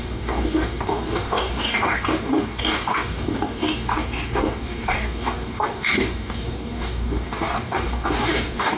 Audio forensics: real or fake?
fake